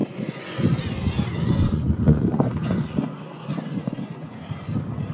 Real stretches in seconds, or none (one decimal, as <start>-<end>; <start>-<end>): 0.8-1.3; 4.4-5.1